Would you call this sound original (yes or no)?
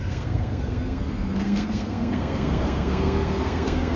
no